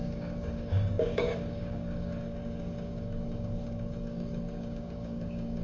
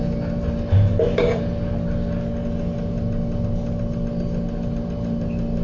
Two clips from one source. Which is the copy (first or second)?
first